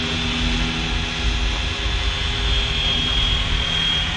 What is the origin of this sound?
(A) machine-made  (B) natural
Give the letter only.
B